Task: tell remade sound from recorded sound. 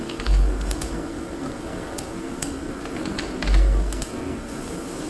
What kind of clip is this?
remade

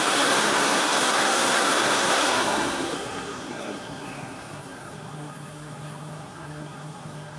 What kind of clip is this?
remade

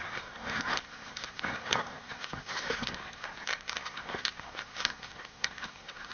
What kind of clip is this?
remade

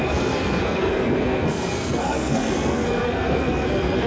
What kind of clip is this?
remade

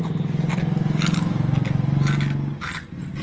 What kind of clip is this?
recorded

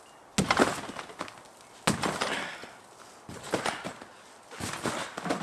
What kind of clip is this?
recorded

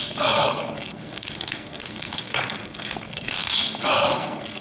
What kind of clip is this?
remade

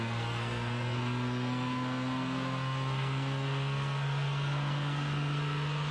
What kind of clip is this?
remade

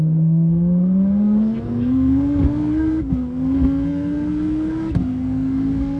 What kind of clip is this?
remade